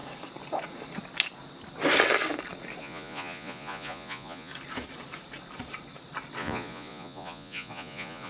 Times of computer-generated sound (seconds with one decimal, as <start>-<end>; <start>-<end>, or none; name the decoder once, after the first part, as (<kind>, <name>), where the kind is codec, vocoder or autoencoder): 2.8-4.5 (vocoder, Vocos); 6.4-8.3